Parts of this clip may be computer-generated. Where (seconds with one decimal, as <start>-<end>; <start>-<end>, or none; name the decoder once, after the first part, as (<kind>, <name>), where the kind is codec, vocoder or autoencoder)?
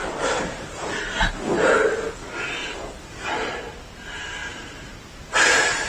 0.0-0.9 (vocoder, BigVGAN v2); 2.6-3.6; 4.4-5.9